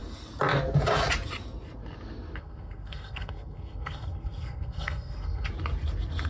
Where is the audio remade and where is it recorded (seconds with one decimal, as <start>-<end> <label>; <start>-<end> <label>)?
0.0-2.4 recorded; 2.4-5.5 remade; 5.5-6.3 recorded